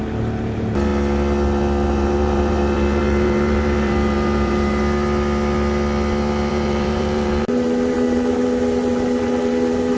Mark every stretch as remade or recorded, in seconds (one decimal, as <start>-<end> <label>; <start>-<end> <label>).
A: 0.0-0.9 remade; 0.9-1.9 recorded; 1.9-4.8 remade; 4.8-6.5 recorded; 6.5-10.0 remade